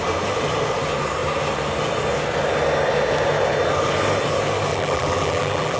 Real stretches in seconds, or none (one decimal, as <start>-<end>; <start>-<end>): 0.0-4.7